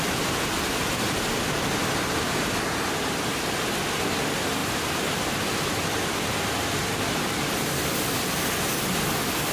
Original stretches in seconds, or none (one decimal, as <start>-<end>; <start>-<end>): 0.0-1.8; 3.3-4.6; 5.3-9.5